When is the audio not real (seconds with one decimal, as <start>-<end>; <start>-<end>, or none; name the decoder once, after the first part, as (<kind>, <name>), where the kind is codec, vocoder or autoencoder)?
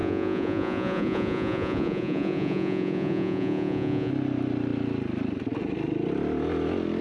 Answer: 0.0-4.1 (vocoder, Vocos)